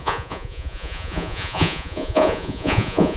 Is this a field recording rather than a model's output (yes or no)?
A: no